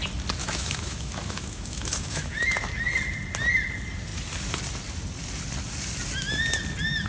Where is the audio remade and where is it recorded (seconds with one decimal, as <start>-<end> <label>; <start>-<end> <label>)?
0.0-0.4 recorded; 0.4-2.6 remade; 2.6-7.1 recorded